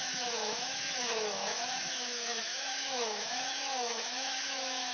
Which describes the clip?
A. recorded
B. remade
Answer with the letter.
B